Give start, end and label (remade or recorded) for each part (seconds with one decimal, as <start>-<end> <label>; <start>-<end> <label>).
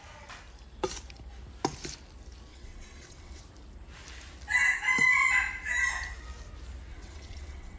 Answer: 0.0-2.5 recorded; 2.5-3.4 remade; 3.4-6.9 recorded; 6.9-7.8 remade